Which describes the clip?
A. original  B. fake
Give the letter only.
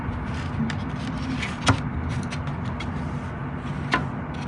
A